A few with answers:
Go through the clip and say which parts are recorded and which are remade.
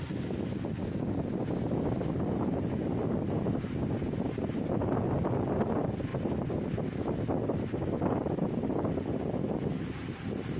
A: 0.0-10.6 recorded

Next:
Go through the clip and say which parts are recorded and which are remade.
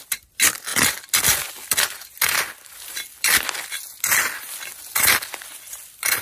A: 0.0-6.2 recorded